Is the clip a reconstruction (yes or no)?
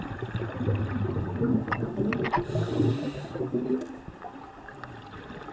no